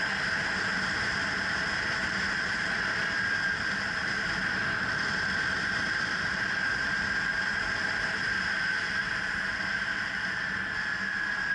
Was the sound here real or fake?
real